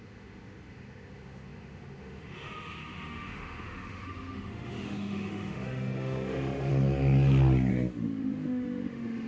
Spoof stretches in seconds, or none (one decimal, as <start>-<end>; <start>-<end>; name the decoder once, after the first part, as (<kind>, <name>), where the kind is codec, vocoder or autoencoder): 0.0-6.7 (autoencoder, DAC-VAE); 7.7-9.3